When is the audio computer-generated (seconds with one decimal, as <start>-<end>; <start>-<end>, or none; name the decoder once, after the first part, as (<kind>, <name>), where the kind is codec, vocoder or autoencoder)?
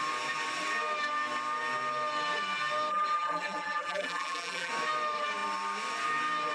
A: 2.9-4.7 (vocoder, BigVGAN v2)